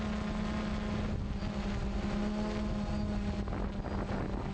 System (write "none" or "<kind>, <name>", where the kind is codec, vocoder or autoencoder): none